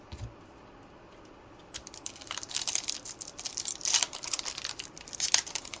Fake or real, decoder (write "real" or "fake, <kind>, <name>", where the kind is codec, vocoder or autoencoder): fake, vocoder, BigVGAN v2